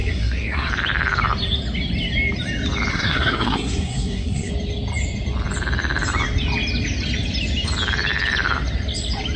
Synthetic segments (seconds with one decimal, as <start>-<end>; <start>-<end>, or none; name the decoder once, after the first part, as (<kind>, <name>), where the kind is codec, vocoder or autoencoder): 0.0-0.7 (codec, SNAC); 2.9-4.5